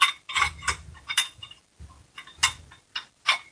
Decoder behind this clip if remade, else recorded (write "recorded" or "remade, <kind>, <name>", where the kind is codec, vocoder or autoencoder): recorded